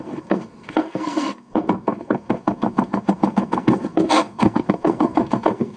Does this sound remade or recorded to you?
remade